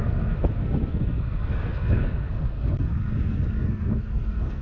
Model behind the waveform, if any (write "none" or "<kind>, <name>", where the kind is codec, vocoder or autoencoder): codec, SNAC